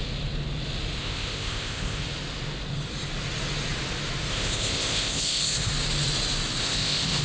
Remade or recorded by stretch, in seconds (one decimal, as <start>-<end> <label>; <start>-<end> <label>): 0.0-1.0 recorded; 1.0-2.0 remade; 2.0-4.3 recorded; 4.3-5.7 remade; 5.7-6.6 recorded; 6.6-7.2 remade